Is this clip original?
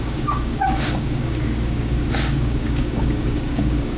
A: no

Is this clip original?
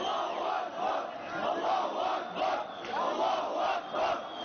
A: yes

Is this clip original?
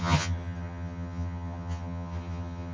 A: no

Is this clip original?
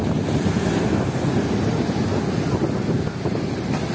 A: yes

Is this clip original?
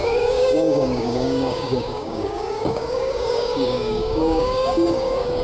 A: no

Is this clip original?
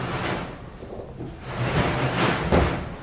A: yes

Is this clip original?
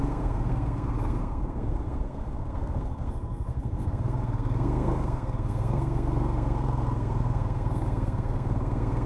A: no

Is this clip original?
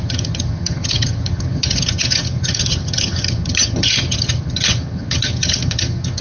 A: no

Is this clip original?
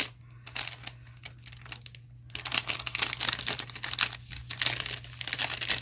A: yes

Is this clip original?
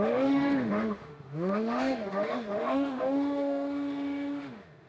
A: no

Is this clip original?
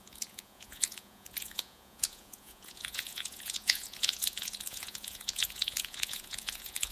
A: no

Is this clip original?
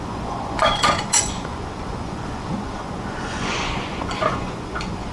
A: no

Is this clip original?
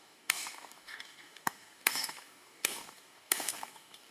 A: no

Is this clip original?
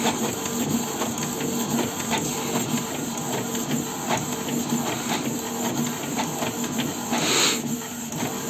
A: yes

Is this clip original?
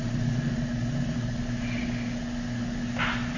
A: yes